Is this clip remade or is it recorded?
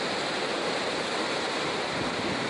recorded